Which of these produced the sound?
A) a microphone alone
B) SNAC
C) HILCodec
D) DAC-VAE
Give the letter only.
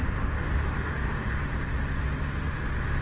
A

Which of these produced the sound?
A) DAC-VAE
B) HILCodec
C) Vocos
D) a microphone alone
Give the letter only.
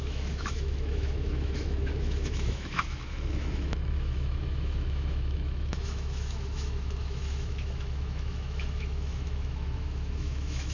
A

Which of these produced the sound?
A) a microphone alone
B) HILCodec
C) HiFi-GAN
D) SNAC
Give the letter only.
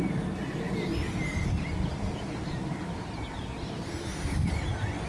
A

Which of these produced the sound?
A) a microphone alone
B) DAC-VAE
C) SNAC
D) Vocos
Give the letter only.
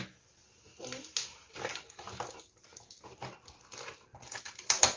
A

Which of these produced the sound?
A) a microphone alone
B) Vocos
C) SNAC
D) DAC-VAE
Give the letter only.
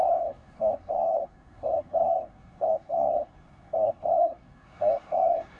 C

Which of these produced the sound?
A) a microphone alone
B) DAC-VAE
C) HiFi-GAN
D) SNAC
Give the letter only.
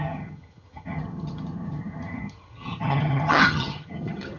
C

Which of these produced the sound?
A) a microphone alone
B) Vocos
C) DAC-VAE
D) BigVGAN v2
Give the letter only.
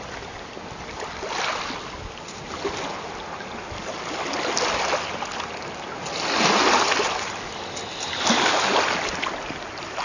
A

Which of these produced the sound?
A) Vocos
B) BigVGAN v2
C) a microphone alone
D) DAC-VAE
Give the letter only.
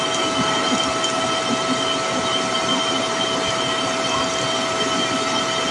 C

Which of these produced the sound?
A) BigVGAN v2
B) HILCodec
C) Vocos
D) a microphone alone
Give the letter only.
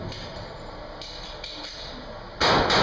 D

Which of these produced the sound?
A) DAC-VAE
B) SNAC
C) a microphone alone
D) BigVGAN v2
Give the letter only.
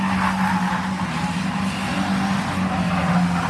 C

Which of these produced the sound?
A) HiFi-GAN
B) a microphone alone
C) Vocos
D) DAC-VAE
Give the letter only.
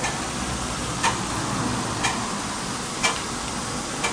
B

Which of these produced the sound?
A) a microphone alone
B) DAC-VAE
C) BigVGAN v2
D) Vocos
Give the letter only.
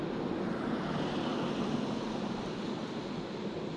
A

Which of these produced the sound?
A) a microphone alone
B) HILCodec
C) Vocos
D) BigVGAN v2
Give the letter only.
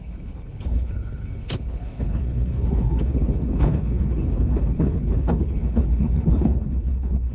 B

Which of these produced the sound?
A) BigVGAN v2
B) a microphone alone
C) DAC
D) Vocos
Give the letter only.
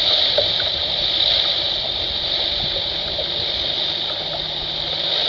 A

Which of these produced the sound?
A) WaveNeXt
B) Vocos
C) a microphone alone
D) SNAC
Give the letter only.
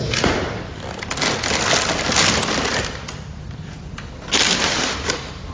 C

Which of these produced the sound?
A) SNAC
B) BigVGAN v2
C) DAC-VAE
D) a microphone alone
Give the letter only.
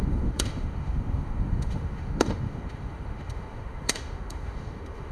C